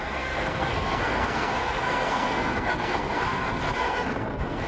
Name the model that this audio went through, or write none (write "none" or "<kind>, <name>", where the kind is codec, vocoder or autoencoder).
codec, SNAC